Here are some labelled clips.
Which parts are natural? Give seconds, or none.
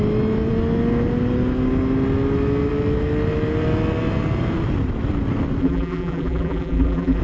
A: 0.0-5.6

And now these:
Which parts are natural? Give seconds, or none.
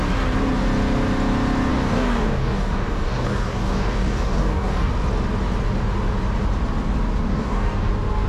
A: 0.0-1.7; 4.9-7.3; 7.9-8.3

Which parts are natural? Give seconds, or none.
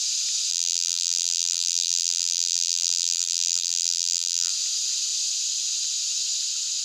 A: 0.0-0.5; 4.5-6.8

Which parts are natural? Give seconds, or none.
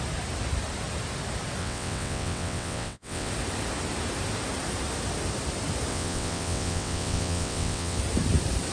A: 0.0-1.6; 3.3-5.9; 8.0-8.7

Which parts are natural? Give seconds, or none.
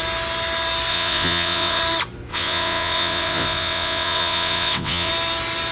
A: 0.0-0.9; 1.8-2.3; 5.1-5.7